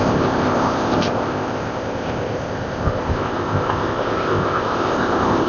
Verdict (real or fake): fake